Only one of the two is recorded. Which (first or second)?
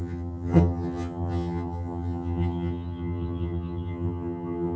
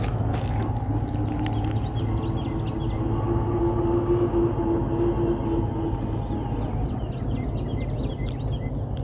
second